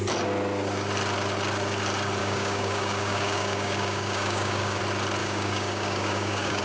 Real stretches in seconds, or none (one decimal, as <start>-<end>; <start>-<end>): 0.0-2.2; 4.8-5.2